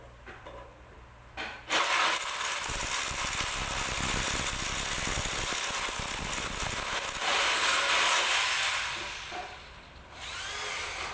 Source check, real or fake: real